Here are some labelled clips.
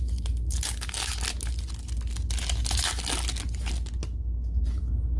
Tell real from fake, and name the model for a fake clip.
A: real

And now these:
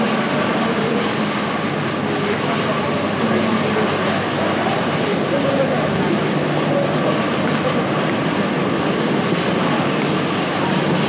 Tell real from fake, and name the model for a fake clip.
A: real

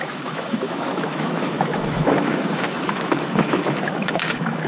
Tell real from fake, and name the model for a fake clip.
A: fake, autoencoder, DAC-VAE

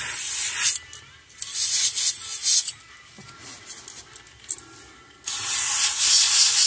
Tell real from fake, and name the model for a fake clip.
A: real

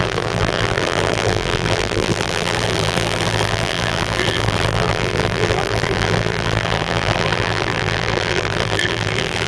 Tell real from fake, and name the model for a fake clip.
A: fake, vocoder, BigVGAN v2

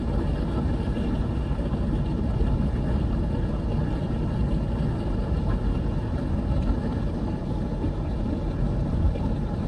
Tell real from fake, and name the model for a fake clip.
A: real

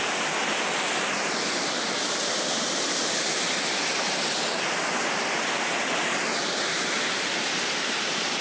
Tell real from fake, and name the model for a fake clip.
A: real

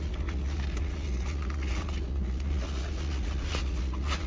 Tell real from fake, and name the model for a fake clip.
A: fake, vocoder, Vocos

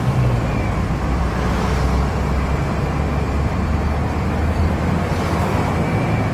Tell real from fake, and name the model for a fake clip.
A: fake, vocoder, BigVGAN v2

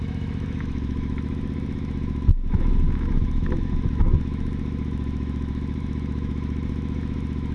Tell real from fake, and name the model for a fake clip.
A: fake, autoencoder, DAC-VAE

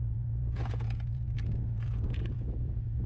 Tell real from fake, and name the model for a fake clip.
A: fake, vocoder, Vocos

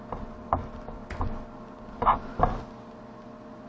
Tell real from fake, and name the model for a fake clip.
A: real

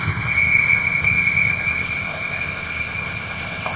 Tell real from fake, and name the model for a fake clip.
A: fake, codec, ZipCodec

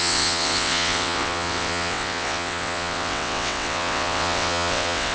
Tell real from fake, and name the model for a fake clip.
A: fake, vocoder, WaveNeXt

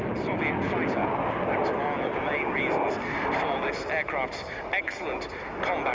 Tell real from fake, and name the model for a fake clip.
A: real